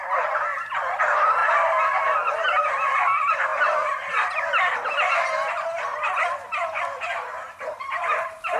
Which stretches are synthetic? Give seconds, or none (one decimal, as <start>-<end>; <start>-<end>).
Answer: 0.0-0.5; 1.0-1.4; 2.7-8.6